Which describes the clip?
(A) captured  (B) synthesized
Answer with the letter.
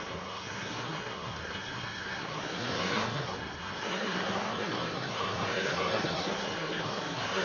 B